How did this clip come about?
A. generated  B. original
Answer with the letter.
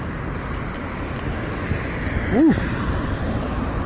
B